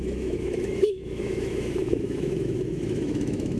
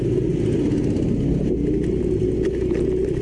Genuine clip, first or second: second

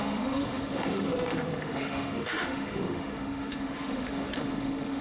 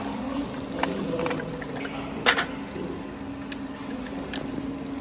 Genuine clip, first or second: second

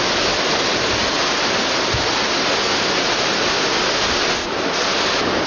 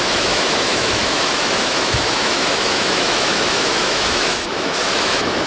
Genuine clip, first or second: first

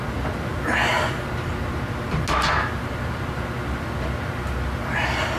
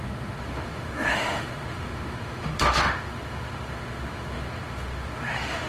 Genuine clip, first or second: first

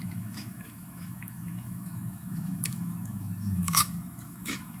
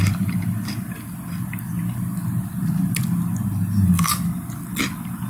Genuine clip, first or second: second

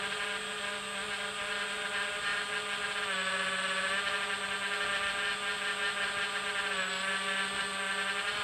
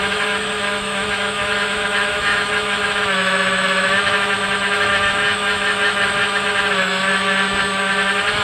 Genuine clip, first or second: first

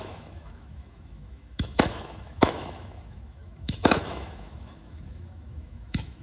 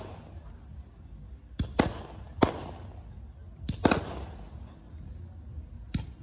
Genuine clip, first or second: second